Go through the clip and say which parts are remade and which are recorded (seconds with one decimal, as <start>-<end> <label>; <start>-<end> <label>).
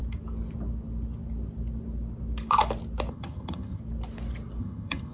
0.0-3.1 recorded; 3.1-3.8 remade; 3.8-4.6 recorded; 4.6-5.1 remade